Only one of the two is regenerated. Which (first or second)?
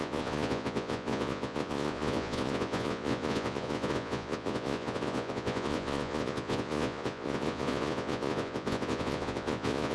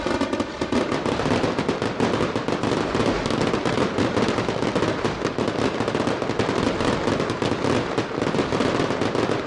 first